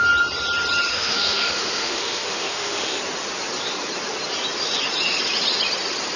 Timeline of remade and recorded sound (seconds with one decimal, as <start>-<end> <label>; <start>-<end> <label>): 0.0-0.9 recorded; 0.9-3.0 remade; 3.0-6.2 recorded